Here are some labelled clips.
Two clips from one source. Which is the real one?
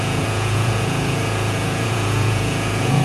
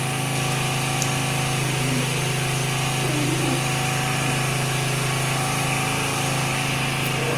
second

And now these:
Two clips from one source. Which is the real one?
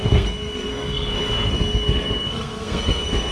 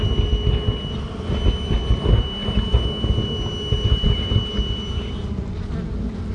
second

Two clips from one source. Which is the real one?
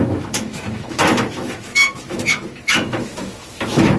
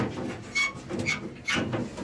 second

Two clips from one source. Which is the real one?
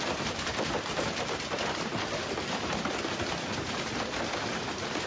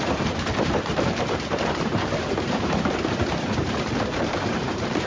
first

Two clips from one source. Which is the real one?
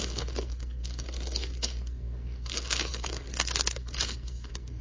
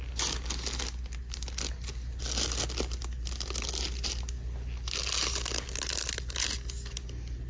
second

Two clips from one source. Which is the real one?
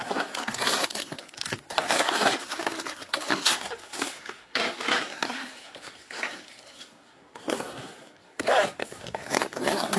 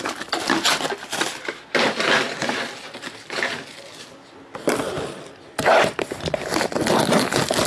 second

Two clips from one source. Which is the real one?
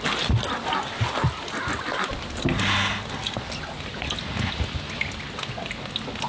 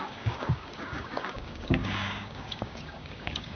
first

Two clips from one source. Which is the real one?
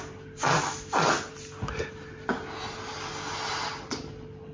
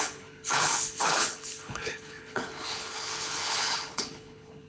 first